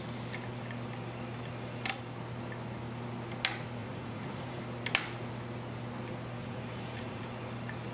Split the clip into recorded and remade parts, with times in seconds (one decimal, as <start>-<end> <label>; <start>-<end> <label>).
0.0-3.8 recorded; 3.8-4.6 remade; 4.6-6.4 recorded; 6.4-7.2 remade; 7.2-7.9 recorded